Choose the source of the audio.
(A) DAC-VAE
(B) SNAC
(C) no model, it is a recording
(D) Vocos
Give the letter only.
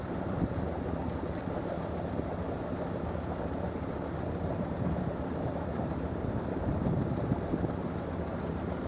C